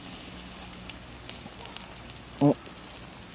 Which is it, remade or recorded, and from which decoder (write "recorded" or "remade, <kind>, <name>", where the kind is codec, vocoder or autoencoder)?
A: recorded